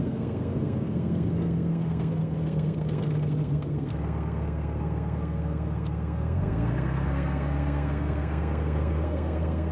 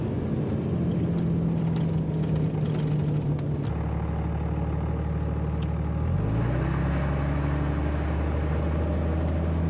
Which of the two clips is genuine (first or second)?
second